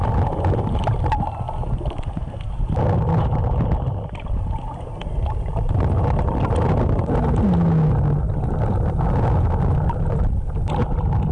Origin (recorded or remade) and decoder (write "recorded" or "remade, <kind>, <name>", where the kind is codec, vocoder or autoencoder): recorded